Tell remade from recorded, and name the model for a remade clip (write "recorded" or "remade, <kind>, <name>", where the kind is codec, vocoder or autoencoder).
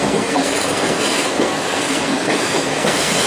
remade, codec, SNAC